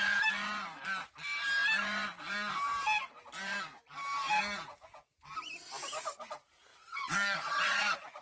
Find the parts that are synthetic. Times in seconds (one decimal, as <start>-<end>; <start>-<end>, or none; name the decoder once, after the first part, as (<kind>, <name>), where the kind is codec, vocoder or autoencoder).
6.7-8.2 (vocoder, Vocos)